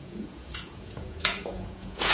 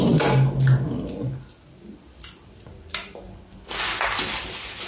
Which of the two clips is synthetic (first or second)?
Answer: first